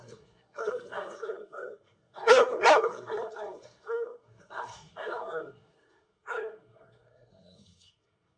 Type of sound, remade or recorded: remade